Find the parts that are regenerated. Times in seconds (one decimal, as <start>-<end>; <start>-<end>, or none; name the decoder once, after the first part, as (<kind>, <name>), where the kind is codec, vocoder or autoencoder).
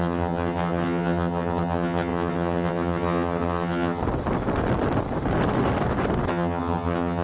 0.0-4.0 (vocoder, HiFi-GAN); 6.3-7.2